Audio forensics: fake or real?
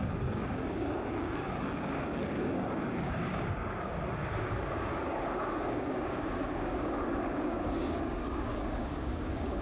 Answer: fake